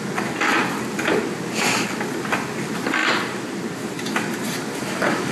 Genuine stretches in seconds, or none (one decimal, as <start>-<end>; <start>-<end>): 0.0-5.3